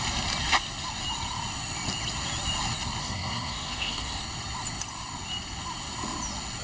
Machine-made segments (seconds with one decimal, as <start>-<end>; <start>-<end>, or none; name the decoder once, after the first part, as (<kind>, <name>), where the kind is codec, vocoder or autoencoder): 3.0-4.2 (codec, SNAC)